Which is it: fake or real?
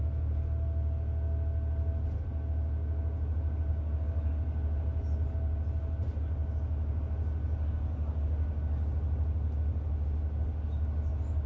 real